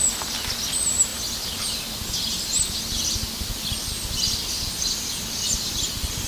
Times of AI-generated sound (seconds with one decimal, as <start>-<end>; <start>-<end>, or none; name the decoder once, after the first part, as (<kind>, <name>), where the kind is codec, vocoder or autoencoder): none